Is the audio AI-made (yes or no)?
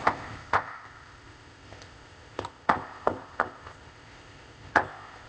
yes